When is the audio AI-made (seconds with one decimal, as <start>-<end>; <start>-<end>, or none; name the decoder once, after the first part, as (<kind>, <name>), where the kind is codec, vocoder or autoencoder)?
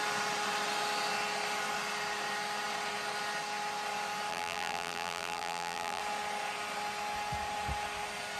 4.3-6.0 (vocoder, BigVGAN v2)